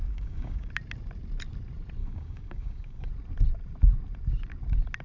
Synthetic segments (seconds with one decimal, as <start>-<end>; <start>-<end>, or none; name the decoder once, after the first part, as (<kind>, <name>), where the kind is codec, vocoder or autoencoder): 0.0-0.7 (codec, DAC); 2.0-3.1

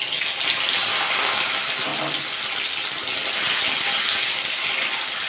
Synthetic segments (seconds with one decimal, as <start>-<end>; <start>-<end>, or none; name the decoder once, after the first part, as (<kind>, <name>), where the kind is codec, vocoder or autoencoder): 0.9-1.5 (codec, DAC)

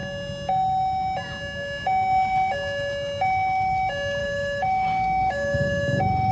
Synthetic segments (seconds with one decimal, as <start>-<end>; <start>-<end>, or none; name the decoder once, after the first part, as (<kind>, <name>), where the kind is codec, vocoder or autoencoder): 4.2-6.3 (codec, DAC)

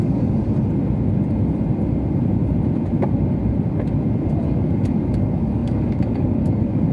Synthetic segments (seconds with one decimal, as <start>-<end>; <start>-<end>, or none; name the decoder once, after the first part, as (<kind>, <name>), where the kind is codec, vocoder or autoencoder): 0.0-0.4 (codec, DAC); 4.4-6.9